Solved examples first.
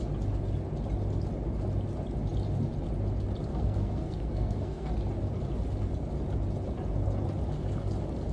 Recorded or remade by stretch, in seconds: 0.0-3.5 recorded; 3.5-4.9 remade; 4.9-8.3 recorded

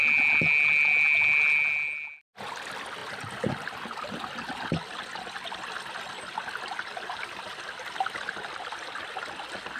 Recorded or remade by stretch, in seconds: 0.0-9.8 recorded

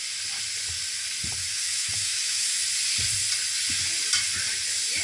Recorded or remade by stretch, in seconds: 0.0-1.4 recorded; 1.4-2.5 remade; 2.5-5.0 recorded

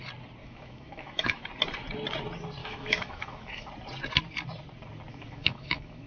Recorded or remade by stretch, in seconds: 0.0-0.4 recorded; 0.4-1.5 remade; 1.5-2.6 recorded; 2.6-3.7 remade; 3.7-5.1 recorded; 5.1-6.1 remade

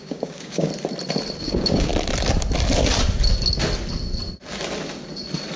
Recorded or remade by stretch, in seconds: 0.0-0.7 remade; 0.7-1.4 recorded; 1.4-1.9 remade; 1.9-5.6 recorded

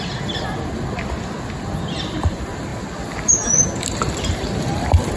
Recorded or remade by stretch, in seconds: 0.0-5.2 recorded

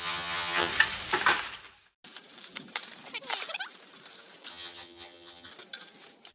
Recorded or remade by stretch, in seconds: 0.0-0.7 remade; 0.7-4.5 recorded; 4.5-5.5 remade; 5.5-6.3 recorded